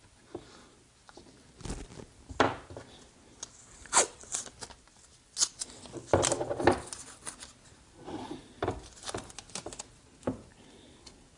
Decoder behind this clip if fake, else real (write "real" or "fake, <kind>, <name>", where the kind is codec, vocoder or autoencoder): real